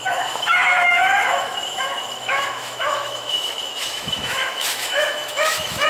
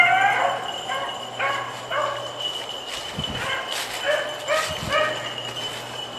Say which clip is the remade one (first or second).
first